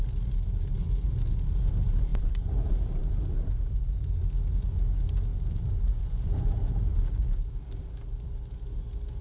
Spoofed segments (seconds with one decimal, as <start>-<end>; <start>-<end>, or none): 2.1-2.6; 5.3-5.9; 6.9-8.1